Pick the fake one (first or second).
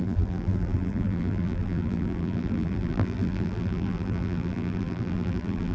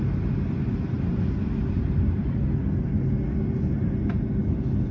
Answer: first